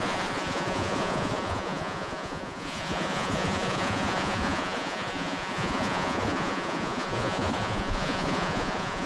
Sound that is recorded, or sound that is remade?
remade